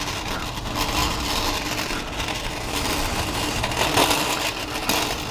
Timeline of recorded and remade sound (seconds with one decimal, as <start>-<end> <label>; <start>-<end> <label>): 0.0-5.3 recorded